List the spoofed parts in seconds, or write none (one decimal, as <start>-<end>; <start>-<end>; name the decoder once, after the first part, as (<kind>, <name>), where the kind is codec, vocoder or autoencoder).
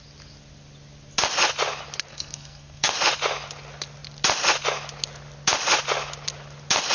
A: 2.1-2.9 (codec, SNAC)